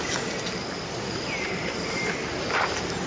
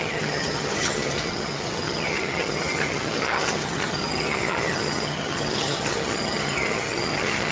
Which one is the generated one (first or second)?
second